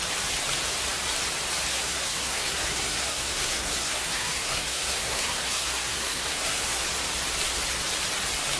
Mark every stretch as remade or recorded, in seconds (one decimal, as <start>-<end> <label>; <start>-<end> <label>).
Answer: 0.0-1.7 recorded; 1.7-6.8 remade; 6.8-8.6 recorded